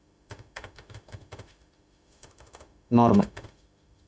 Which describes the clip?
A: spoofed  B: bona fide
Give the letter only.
A